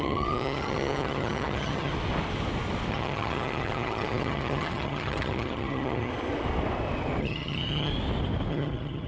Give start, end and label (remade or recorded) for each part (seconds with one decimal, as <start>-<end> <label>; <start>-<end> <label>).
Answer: 0.0-1.9 remade; 1.9-2.9 recorded; 2.9-6.1 remade; 6.1-7.2 recorded; 7.2-7.9 remade; 7.9-8.5 recorded; 8.5-9.1 remade